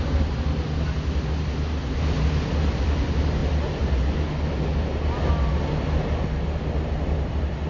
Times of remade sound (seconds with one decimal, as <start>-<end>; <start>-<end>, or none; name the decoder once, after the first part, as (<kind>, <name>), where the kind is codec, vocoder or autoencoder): none